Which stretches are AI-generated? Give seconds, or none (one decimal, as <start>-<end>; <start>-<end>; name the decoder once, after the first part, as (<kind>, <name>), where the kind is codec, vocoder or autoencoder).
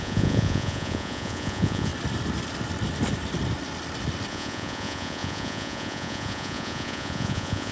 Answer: 0.0-1.9 (vocoder, Vocos); 4.3-7.7